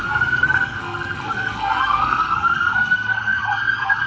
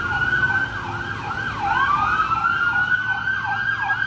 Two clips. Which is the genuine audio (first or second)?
second